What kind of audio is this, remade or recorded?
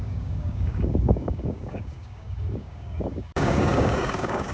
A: remade